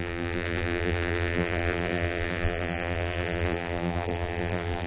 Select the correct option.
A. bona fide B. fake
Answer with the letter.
B